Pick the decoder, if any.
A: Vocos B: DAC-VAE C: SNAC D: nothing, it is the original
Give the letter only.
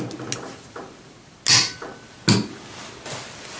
D